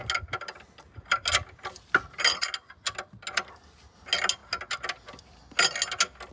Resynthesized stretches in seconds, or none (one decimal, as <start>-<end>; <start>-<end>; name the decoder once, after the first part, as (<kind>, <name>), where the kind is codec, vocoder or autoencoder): none